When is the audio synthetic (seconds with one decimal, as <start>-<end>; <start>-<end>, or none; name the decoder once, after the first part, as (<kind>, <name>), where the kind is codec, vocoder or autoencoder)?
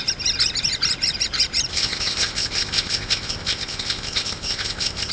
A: 1.7-5.1 (codec, ZipCodec)